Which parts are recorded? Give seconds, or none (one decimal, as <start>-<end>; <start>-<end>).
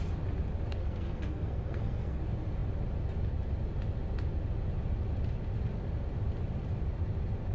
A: 0.0-0.8; 2.2-7.5